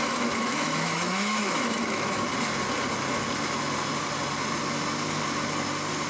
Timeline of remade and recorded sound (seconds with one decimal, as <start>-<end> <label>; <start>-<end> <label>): 0.0-2.3 remade; 2.3-6.1 recorded